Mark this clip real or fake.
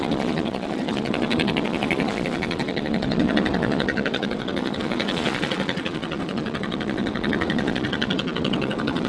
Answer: fake